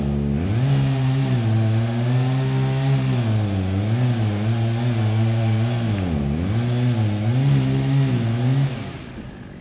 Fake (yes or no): no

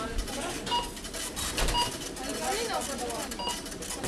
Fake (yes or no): no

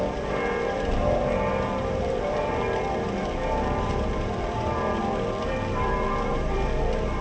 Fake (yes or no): yes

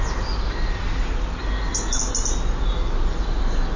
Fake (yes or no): no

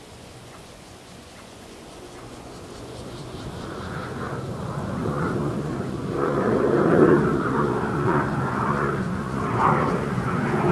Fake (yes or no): yes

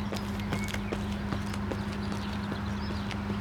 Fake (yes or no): no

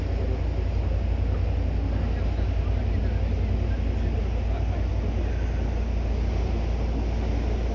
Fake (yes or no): no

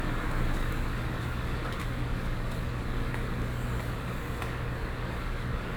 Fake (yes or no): yes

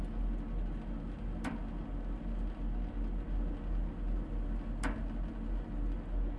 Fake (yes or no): no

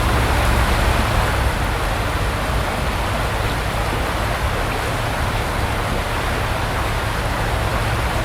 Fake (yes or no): no